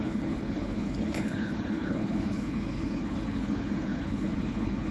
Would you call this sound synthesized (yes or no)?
yes